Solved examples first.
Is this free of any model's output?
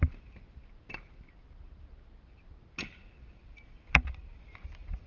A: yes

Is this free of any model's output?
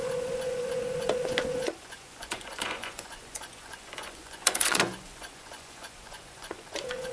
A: no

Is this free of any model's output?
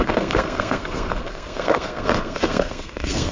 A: no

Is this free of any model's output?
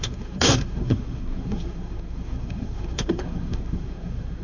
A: no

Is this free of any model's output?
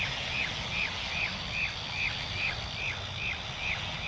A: yes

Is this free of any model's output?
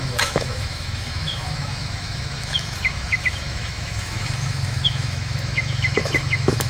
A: no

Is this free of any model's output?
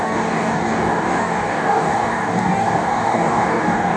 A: no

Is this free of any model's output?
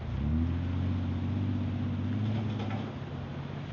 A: yes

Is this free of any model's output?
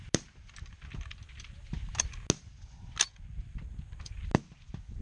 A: yes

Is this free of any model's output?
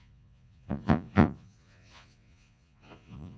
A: no